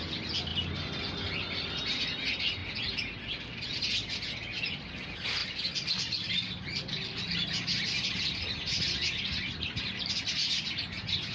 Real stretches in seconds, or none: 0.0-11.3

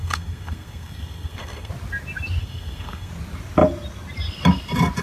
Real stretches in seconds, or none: 1.7-2.4; 3.1-5.0

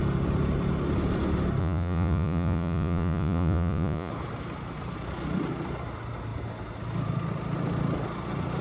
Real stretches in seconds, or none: 0.0-1.6; 4.1-8.6

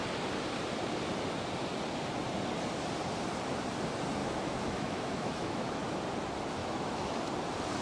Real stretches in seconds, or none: 0.0-4.2; 5.8-6.6; 7.2-7.8

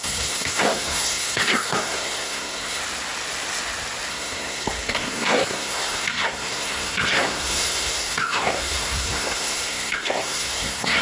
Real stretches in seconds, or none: 2.8-4.1

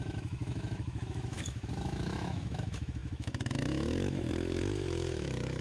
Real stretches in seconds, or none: none